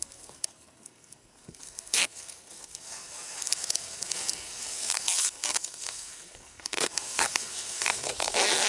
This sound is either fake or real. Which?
fake